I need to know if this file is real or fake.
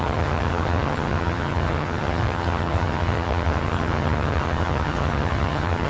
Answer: fake